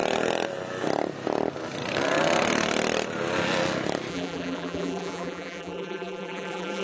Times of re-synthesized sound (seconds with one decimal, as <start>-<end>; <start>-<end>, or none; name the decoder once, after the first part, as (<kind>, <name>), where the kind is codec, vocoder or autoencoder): 4.1-6.8 (vocoder, BigVGAN v2)